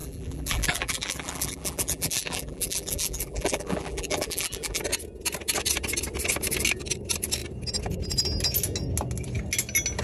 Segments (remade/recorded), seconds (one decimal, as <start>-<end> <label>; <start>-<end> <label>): 0.0-4.8 remade; 4.8-10.0 recorded